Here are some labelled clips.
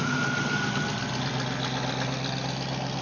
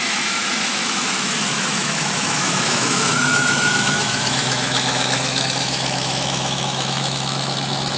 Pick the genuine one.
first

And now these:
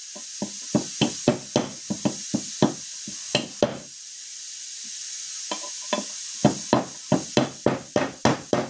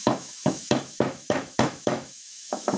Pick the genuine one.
first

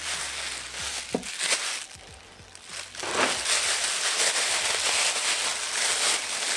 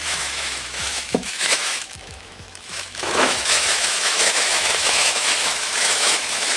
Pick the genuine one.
first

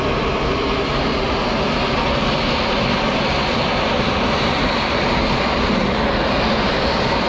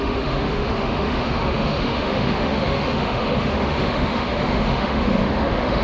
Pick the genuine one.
first